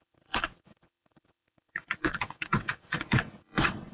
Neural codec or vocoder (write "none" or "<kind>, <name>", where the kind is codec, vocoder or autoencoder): vocoder, WaveNeXt